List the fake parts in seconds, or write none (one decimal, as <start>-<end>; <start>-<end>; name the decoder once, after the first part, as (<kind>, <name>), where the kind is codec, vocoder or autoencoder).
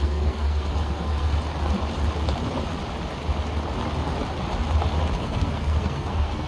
0.0-1.3 (codec, SNAC); 5.2-6.5